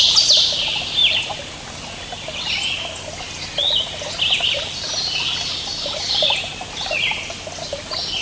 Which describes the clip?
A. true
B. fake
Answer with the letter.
A